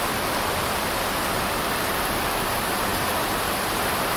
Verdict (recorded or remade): recorded